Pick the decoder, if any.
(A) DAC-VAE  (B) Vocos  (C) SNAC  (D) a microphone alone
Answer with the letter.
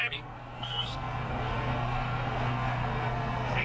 C